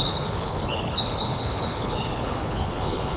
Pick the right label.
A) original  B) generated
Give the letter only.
B